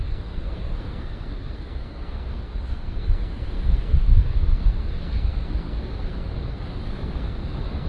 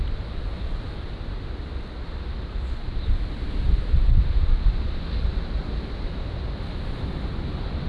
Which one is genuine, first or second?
second